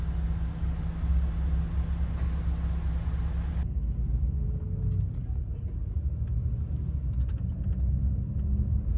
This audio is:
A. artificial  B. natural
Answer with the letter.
B